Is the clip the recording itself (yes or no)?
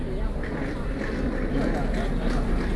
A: yes